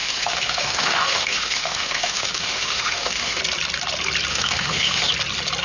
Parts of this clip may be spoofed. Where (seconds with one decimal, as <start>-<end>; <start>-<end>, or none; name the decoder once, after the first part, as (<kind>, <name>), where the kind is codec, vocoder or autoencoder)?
0.0-3.4 (autoencoder, DAC-VAE); 4.3-5.1

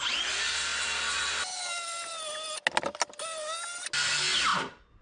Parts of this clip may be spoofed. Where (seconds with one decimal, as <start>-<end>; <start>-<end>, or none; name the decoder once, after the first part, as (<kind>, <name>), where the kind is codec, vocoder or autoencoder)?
none

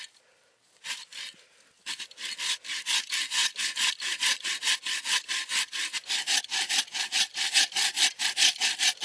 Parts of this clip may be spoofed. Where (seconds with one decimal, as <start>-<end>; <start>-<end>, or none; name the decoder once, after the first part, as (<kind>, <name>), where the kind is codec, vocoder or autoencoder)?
none

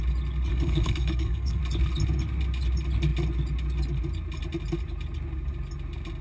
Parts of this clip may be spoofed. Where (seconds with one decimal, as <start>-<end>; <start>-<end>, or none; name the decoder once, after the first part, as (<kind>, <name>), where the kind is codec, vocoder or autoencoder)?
0.5-1.6 (codec, SNAC)

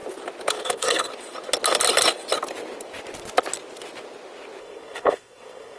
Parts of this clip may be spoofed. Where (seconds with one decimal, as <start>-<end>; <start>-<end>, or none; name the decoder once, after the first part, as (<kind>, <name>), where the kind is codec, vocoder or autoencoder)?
0.5-1.1 (codec, SNAC); 4.6-5.8

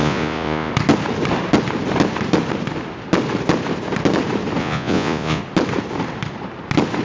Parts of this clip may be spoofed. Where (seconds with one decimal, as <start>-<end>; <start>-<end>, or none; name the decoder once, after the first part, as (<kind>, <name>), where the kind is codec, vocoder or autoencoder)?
0.0-0.7 (vocoder, Vocos); 4.6-5.4

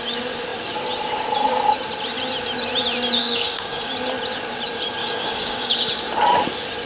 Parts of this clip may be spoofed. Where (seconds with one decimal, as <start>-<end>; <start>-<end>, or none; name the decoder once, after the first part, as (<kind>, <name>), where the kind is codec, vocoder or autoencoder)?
3.2-3.9 (codec, DAC); 5.0-5.7